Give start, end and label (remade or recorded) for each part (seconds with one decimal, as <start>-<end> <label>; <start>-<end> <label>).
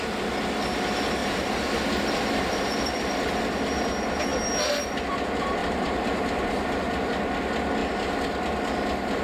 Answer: 0.0-1.2 recorded; 1.2-1.8 remade; 1.8-5.6 recorded; 5.6-7.1 remade; 7.1-9.2 recorded